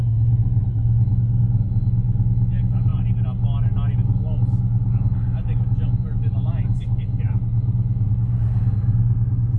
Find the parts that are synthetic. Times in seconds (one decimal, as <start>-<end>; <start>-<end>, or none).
none